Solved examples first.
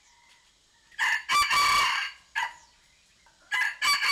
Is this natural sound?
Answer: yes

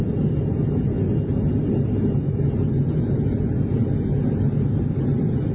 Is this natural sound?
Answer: yes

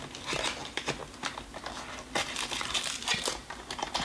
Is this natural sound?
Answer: yes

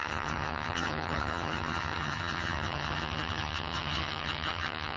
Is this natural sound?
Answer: no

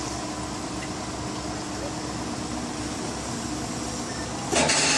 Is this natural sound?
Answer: yes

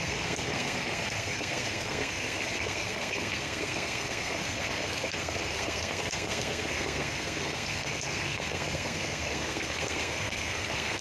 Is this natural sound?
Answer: no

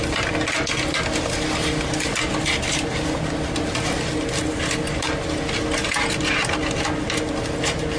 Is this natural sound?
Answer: yes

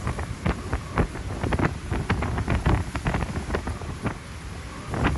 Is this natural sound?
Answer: yes